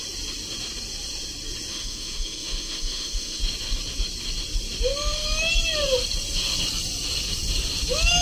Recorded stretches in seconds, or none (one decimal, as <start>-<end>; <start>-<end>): 0.0-1.7; 3.4-8.2